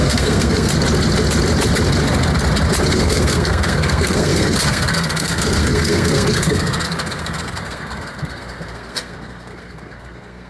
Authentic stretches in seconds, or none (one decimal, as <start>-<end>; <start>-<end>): 0.7-2.9